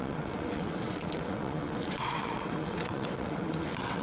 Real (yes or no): no